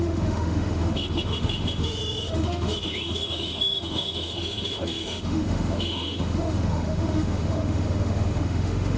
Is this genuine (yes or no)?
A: no